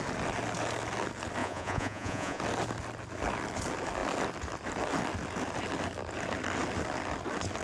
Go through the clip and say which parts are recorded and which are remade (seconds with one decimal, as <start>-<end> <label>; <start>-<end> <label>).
0.0-1.4 recorded; 1.4-2.4 remade; 2.4-7.6 recorded